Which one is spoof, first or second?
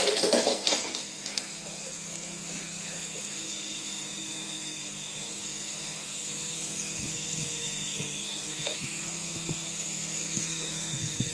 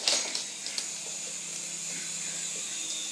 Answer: first